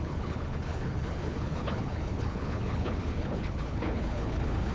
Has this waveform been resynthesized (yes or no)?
yes